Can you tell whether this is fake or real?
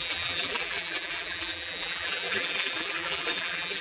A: fake